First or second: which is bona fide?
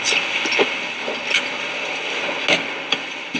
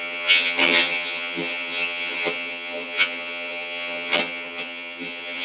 first